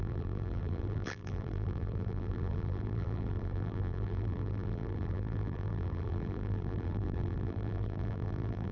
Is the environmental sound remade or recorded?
remade